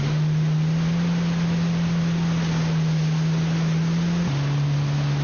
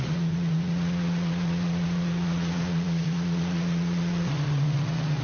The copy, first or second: second